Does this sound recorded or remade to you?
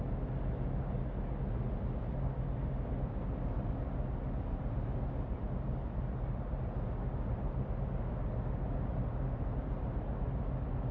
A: recorded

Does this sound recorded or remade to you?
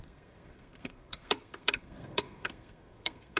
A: remade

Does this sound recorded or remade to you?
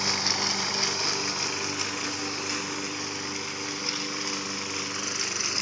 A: recorded